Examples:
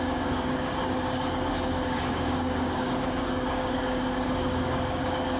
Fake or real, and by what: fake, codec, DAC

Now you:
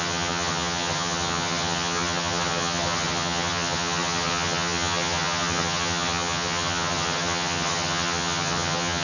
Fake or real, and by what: fake, vocoder, HiFi-GAN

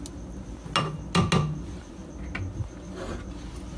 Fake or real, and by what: real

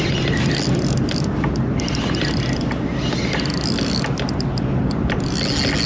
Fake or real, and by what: real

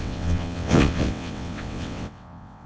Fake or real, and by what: fake, vocoder, WaveNeXt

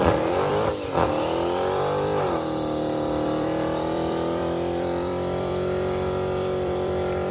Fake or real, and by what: fake, vocoder, BigVGAN v2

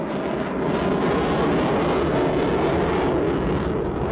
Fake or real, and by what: real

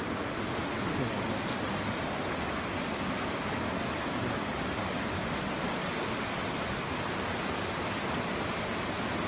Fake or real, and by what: real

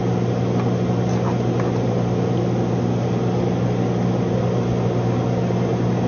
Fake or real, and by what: real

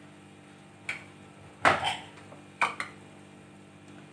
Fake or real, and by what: real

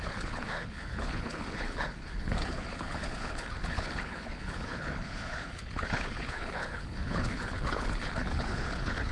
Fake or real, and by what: fake, codec, HILCodec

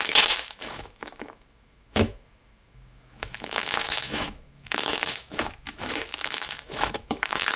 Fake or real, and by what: fake, autoencoder, DAC-VAE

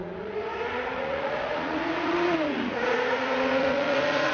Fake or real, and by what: fake, vocoder, Vocos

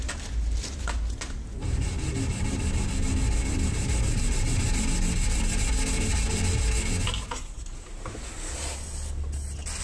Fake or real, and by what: real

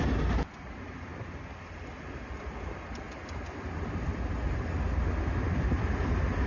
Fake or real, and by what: real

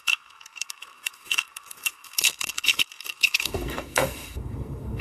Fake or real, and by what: fake, codec, SNAC